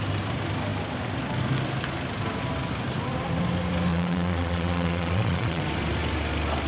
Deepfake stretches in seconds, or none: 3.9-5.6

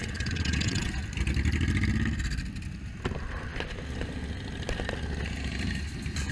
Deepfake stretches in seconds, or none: 0.0-0.9